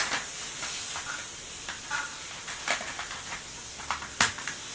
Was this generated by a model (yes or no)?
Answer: no